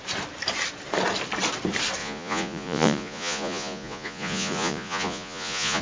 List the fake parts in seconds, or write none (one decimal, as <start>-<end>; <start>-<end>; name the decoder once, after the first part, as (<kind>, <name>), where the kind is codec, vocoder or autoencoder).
2.0-5.8 (vocoder, Vocos)